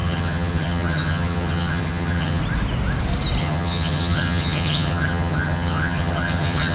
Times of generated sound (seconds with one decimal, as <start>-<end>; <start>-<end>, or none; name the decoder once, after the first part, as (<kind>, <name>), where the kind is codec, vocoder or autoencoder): 0.0-2.4 (vocoder, HiFi-GAN); 3.4-6.7